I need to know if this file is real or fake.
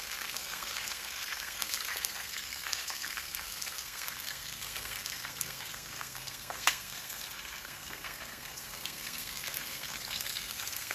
fake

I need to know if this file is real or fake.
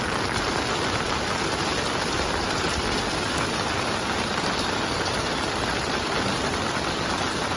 real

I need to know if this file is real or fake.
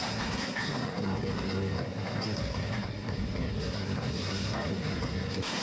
fake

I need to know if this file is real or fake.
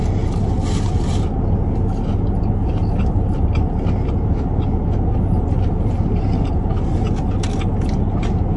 real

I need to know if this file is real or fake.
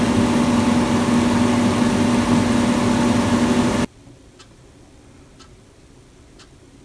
real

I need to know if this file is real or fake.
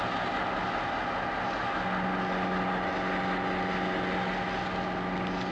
real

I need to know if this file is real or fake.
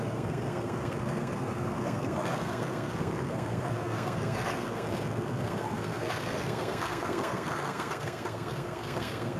fake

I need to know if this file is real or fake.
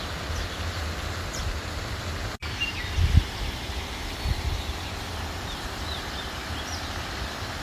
real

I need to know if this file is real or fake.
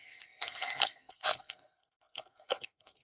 fake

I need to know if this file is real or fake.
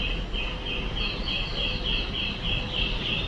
real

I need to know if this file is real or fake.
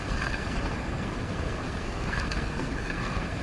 fake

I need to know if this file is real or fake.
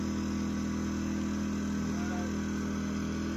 real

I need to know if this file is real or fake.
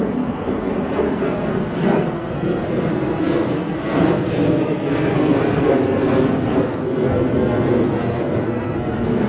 fake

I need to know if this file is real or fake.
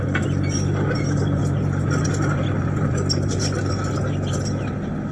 real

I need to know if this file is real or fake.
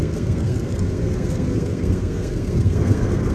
fake